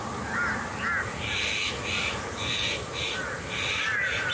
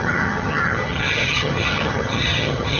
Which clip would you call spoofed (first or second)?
second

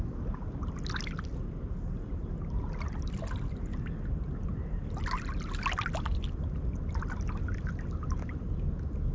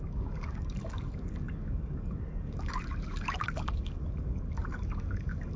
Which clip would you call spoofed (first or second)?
second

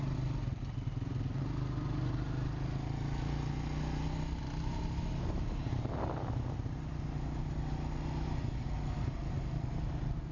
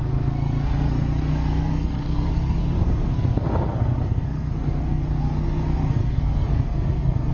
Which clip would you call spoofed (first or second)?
second